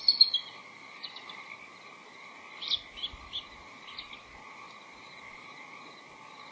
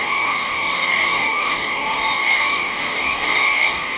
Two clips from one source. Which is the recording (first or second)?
first